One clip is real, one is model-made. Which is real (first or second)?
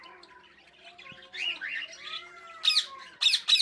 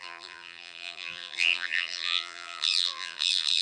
first